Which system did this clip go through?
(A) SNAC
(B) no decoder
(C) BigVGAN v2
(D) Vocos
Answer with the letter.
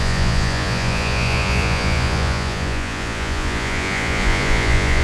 D